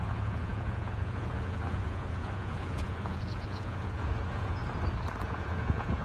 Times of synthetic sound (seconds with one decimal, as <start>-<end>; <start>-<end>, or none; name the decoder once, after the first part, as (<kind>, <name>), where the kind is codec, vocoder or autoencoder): 0.0-4.6 (vocoder, Vocos); 5.2-6.0